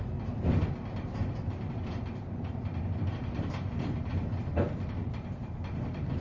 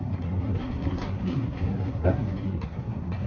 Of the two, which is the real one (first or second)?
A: first